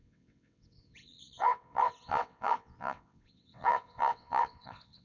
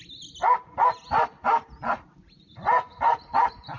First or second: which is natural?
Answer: second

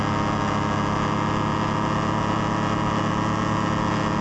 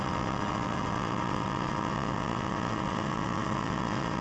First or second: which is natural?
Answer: first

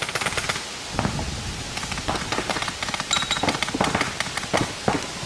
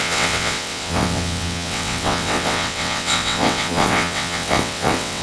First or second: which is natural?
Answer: first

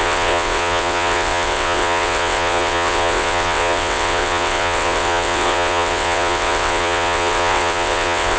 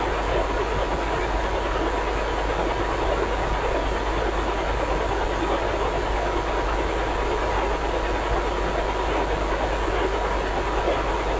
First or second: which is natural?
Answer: second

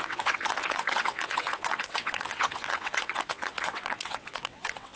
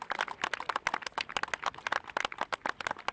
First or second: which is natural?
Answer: second